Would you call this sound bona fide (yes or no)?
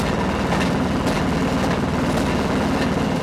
yes